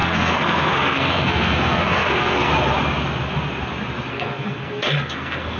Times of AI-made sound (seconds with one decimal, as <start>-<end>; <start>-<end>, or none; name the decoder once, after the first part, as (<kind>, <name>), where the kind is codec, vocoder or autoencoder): 0.0-2.5 (codec, SNAC); 4.1-5.6